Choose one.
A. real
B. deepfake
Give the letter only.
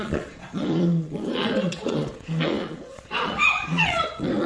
B